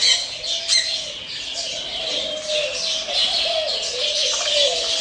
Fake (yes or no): no